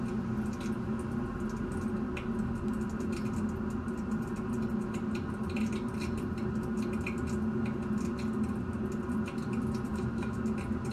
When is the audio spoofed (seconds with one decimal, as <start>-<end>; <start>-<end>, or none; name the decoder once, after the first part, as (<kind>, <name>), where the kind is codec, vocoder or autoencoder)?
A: 9.9-10.4 (autoencoder, DAC-VAE)

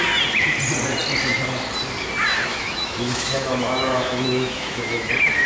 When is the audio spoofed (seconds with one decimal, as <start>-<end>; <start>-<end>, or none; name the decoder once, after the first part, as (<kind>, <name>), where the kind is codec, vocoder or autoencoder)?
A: 2.5-5.1 (autoencoder, DAC-VAE)

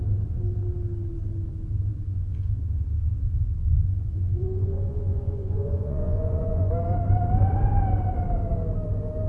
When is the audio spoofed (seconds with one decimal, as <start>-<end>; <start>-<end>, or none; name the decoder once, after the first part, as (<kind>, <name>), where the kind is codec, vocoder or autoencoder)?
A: 2.1-2.6 (vocoder, Vocos); 3.6-6.7

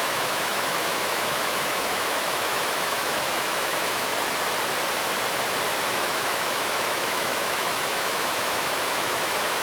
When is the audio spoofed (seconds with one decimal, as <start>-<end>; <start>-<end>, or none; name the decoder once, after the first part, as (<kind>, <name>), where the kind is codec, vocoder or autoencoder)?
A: 0.0-4.1 (autoencoder, DAC-VAE); 5.9-9.6

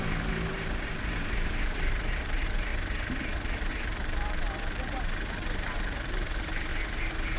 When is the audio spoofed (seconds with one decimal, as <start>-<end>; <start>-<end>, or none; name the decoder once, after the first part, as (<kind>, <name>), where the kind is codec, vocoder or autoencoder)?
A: 0.0-2.7 (vocoder, BigVGAN v2); 3.7-6.7